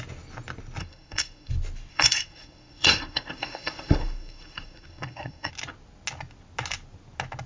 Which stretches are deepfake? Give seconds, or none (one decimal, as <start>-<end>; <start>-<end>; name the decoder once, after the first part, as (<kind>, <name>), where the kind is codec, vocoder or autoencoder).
0.8-1.5 (codec, SNAC); 1.9-5.5